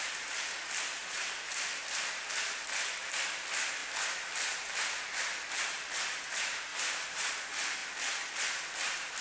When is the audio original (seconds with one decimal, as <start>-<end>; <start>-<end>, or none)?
0.0-1.0; 1.8-6.7; 7.3-9.2

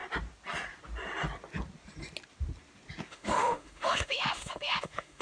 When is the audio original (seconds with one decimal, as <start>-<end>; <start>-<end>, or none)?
0.0-3.1

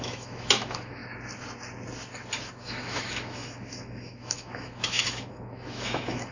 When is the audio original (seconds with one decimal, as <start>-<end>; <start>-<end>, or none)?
1.0-2.5

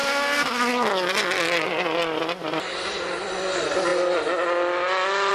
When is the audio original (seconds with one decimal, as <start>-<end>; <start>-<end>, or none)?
0.0-5.3

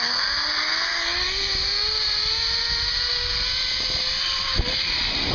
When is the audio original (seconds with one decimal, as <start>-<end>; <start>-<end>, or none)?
0.0-5.3

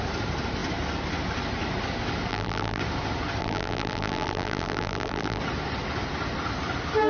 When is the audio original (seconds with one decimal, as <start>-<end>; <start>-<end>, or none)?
0.0-2.3; 2.8-3.4; 5.4-7.1

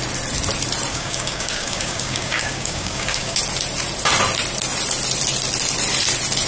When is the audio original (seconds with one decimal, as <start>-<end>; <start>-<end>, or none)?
0.0-0.9; 3.4-6.5